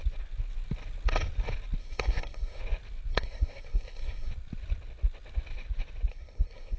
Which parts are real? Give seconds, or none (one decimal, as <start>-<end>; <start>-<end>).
0.0-1.8; 2.6-3.1; 4.3-6.1